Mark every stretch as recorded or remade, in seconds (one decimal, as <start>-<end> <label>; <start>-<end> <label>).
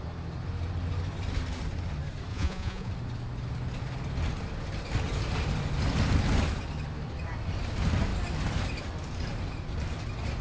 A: 0.0-2.3 recorded; 2.3-2.9 remade; 2.9-10.4 recorded